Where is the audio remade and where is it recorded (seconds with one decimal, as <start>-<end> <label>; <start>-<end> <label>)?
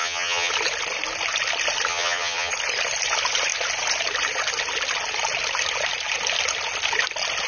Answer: 0.0-0.5 remade; 0.5-1.9 recorded; 1.9-2.5 remade; 2.5-7.5 recorded